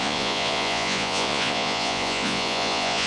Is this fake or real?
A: fake